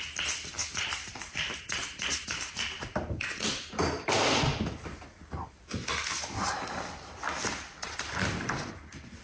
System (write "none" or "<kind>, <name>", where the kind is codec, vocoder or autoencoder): vocoder, BigVGAN v2